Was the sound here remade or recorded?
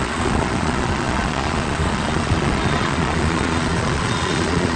remade